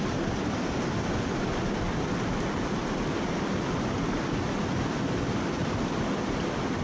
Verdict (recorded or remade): recorded